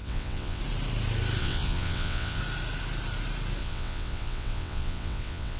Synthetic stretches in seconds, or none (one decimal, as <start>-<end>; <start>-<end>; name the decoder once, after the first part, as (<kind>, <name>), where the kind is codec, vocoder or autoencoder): 0.0-0.6 (vocoder, WaveNeXt); 1.4-2.4; 3.6-5.6